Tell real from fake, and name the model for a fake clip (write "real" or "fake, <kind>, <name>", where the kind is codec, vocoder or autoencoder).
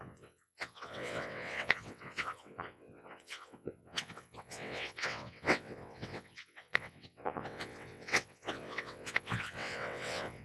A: fake, vocoder, WaveNeXt